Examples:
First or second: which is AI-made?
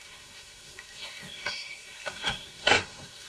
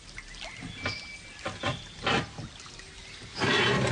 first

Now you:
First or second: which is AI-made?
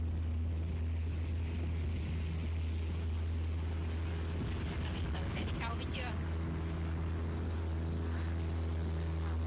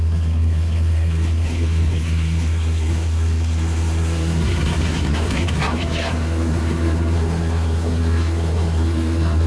second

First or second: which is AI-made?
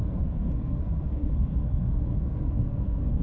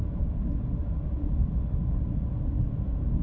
first